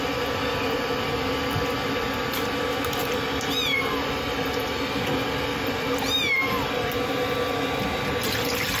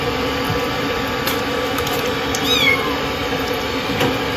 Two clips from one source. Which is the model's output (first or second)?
second